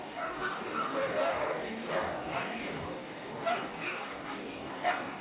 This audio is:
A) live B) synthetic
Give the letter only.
B